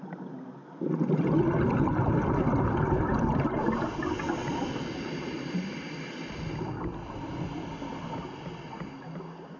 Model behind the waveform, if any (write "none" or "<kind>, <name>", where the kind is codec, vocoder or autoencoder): none